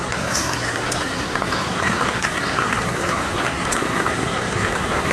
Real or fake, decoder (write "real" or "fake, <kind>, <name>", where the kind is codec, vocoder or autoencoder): fake, codec, SNAC